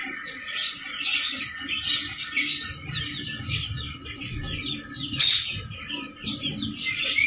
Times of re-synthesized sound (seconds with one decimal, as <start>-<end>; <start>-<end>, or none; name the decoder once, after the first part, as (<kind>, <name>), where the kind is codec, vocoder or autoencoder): 0.0-1.4 (vocoder, BigVGAN v2)